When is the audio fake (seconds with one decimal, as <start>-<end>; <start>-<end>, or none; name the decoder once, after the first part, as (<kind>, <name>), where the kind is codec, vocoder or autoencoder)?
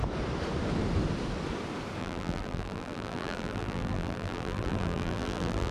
2.0-5.7 (vocoder, BigVGAN v2)